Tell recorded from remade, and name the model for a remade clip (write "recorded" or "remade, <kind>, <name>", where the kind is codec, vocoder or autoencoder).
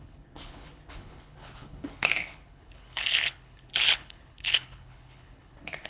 remade, codec, HILCodec